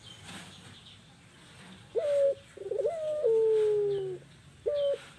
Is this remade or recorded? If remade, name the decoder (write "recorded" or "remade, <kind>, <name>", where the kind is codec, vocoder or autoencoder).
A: recorded